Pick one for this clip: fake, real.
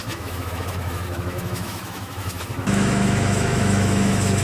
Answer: fake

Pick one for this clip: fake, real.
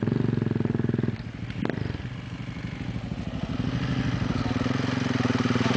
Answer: real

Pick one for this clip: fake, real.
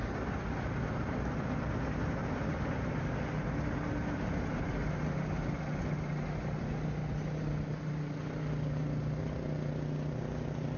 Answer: real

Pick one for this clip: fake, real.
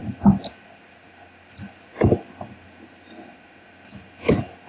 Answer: real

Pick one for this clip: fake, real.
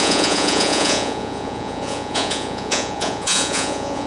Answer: fake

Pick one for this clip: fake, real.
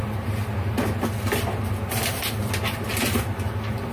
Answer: real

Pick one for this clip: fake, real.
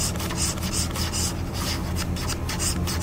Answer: real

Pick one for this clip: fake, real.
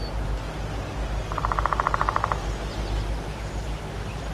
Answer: real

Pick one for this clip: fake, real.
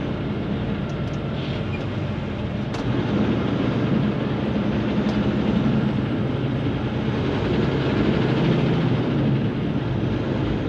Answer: real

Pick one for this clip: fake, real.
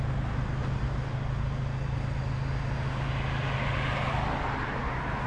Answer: real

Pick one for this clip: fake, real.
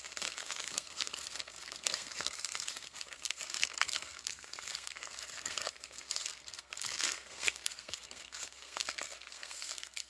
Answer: fake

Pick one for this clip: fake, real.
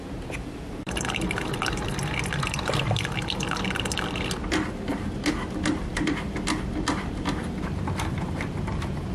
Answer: fake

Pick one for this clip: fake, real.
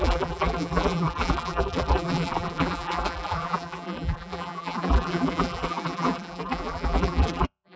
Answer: fake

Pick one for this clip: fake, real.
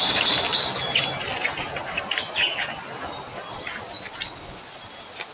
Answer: real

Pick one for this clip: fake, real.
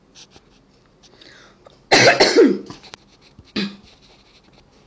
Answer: real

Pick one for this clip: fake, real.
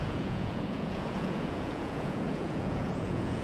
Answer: fake